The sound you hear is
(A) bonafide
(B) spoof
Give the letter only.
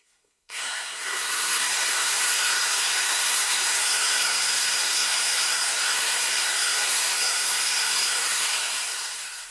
B